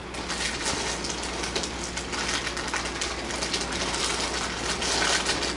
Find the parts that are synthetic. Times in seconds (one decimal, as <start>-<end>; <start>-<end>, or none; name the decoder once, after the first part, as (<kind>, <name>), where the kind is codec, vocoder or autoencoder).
none